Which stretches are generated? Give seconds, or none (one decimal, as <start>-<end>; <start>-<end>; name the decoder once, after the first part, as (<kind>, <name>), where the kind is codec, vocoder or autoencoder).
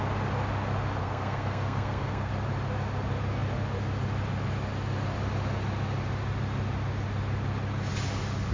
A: 1.0-2.3 (codec, SNAC)